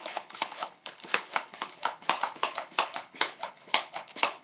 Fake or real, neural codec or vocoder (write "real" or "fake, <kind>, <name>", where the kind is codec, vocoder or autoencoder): fake, codec, HILCodec